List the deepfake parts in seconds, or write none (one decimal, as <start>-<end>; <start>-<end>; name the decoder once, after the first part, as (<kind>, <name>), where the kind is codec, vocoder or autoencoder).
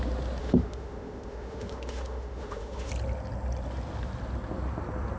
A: 0.4-2.9 (autoencoder, DAC-VAE)